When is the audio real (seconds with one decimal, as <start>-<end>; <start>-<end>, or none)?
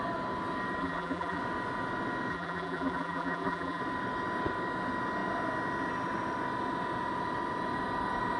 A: 0.0-0.8; 1.4-2.3; 3.8-8.4